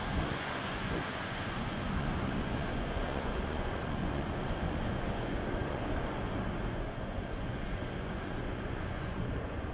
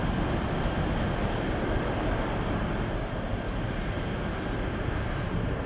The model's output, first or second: first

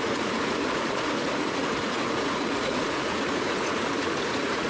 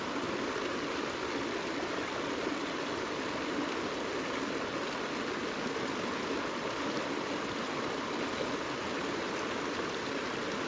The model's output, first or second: first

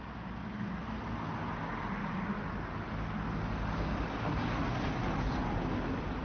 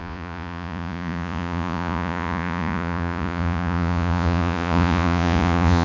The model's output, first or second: second